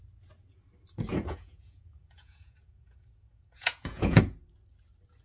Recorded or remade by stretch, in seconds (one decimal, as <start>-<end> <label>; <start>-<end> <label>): 0.0-1.1 recorded; 1.1-4.2 remade; 4.2-5.2 recorded